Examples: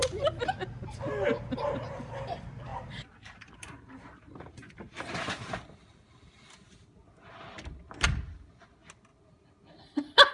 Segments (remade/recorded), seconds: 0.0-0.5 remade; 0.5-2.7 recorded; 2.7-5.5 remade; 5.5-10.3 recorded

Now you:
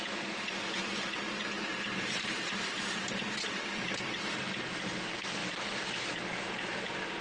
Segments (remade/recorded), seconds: 0.0-1.7 recorded; 1.7-4.4 remade; 4.4-7.2 recorded

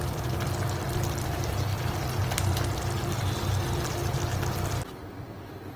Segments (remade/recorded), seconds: 0.0-5.8 recorded

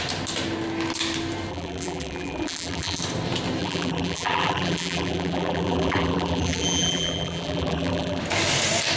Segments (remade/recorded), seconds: 0.0-1.5 recorded; 1.5-3.0 remade; 3.0-3.6 recorded; 3.6-8.2 remade; 8.2-9.0 recorded

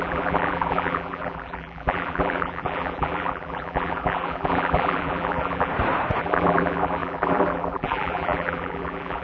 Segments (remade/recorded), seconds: 0.0-5.7 remade; 5.7-6.2 recorded; 6.2-9.2 remade